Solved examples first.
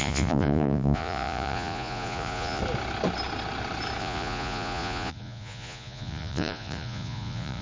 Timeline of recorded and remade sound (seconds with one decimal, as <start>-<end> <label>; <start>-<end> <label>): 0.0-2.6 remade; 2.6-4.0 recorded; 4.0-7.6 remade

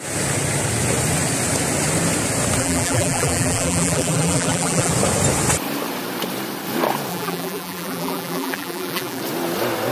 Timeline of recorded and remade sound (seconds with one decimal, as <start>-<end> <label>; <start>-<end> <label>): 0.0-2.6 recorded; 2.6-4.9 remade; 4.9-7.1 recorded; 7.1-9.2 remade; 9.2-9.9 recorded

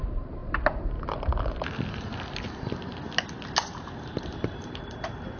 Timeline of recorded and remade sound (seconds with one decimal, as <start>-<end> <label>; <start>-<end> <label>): 0.0-0.4 remade; 0.4-3.6 recorded; 3.6-5.4 remade